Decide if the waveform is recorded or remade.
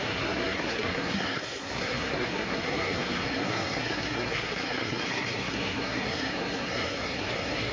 remade